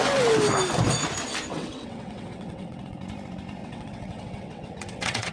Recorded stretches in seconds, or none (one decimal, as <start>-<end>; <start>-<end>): 0.0-1.5; 3.0-3.6